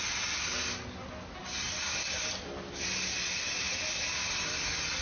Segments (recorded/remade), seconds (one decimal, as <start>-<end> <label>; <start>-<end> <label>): 0.0-5.0 recorded